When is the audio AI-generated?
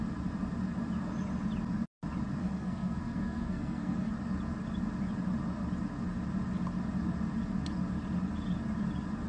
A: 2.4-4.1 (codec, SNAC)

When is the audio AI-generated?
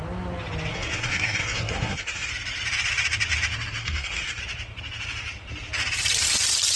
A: 0.7-2.3 (codec, SNAC); 3.8-4.4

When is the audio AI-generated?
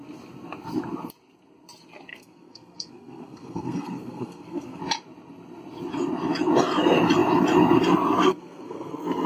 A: 2.1-4.8 (codec, SNAC); 8.2-9.3